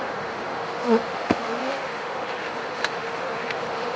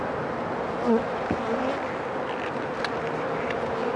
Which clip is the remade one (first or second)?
first